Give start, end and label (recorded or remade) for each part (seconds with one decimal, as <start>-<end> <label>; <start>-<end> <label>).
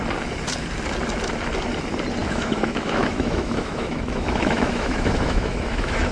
0.0-2.2 recorded; 2.2-6.1 remade